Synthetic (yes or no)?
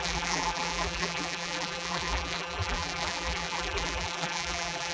yes